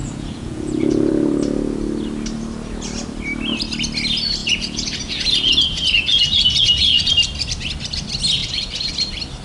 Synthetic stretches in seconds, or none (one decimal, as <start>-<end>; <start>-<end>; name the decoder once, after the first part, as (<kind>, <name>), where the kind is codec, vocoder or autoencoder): 0.0-1.1 (vocoder, Vocos); 4.4-7.1; 8.4-8.9